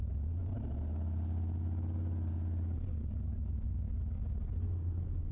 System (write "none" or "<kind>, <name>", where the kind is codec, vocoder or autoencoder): none